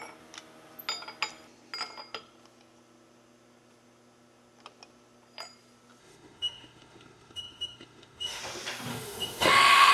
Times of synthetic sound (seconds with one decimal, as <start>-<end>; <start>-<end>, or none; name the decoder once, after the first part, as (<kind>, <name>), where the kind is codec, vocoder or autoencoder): 6.0-8.4 (autoencoder, DAC-VAE); 8.9-9.9